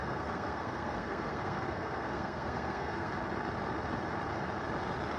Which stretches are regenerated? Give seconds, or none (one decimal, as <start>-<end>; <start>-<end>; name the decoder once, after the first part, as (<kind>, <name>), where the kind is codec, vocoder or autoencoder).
0.0-3.1 (codec, SNAC)